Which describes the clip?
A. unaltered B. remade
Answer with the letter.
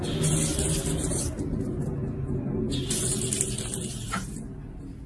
A